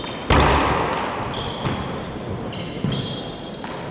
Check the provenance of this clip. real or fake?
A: real